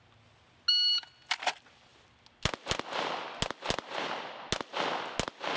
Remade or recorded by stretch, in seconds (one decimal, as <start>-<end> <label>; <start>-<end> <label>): 0.0-5.6 recorded